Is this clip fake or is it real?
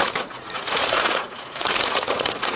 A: fake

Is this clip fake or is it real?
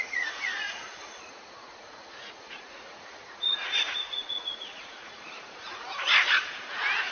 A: fake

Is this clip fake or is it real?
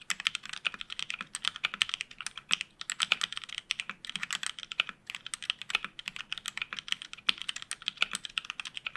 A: real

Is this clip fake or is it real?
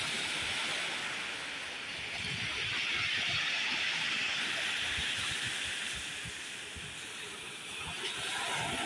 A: real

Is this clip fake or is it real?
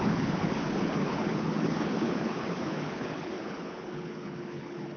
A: fake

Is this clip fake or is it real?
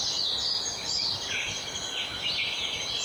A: real